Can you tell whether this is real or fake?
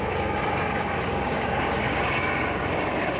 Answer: fake